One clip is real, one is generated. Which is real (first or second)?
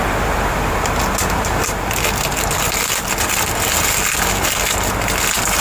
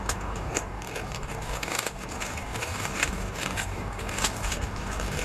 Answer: first